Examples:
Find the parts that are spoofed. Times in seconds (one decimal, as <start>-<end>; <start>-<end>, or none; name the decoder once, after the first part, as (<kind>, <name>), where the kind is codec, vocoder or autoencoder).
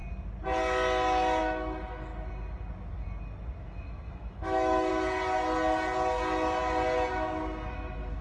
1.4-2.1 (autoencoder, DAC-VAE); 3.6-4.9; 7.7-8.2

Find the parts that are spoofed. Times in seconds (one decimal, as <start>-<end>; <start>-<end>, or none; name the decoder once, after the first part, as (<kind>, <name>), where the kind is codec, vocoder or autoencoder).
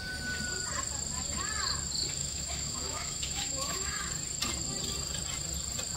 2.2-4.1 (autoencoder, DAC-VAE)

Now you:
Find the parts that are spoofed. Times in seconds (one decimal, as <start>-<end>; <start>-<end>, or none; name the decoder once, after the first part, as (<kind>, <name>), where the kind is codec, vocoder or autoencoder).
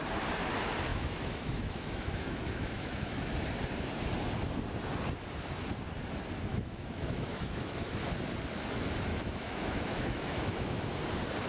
0.9-3.3 (autoencoder, DAC-VAE); 6.5-7.9; 9.1-10.9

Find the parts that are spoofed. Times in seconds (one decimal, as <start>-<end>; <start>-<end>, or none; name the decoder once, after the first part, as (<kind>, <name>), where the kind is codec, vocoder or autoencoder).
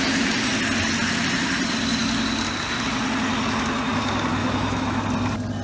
4.4-5.0 (autoencoder, DAC-VAE)